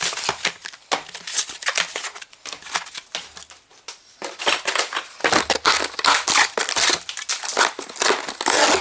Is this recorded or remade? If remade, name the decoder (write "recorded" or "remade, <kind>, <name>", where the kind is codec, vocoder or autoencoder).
recorded